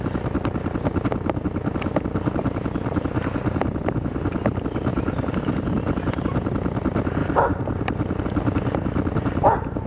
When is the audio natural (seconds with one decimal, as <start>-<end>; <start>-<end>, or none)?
0.0-7.2; 8.2-9.9